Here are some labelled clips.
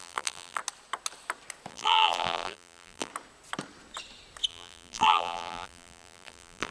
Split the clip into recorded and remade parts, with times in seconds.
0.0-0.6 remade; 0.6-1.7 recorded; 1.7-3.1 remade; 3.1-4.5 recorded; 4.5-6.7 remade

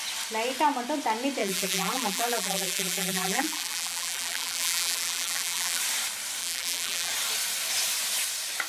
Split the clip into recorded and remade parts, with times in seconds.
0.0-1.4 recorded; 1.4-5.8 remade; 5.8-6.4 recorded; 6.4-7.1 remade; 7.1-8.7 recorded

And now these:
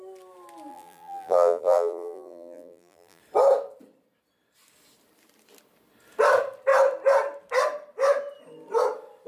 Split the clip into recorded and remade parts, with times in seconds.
0.0-0.7 recorded; 0.7-3.2 remade; 3.2-9.3 recorded

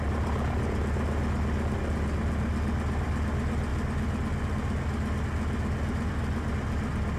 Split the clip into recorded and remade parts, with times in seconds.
0.0-7.2 recorded

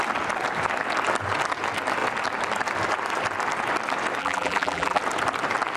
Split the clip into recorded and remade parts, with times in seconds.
0.0-4.2 recorded; 4.2-5.0 remade; 5.0-5.8 recorded

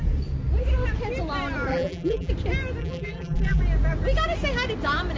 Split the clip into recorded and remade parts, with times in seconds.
0.0-1.7 recorded; 1.7-2.3 remade; 2.3-2.8 recorded; 2.8-3.6 remade; 3.6-5.2 recorded